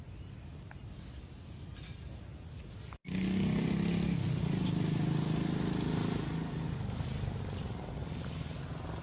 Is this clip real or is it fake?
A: real